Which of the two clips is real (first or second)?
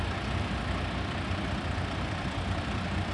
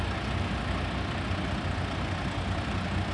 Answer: second